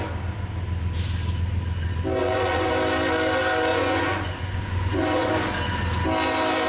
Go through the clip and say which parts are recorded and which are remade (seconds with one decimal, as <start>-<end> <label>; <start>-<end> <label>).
0.0-2.2 recorded; 2.2-2.7 remade; 2.7-3.7 recorded; 3.7-5.3 remade; 5.3-6.7 recorded